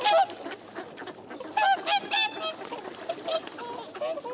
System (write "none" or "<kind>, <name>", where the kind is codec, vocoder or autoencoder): none